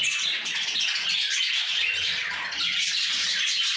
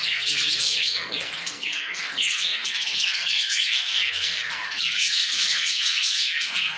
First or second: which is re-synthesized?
second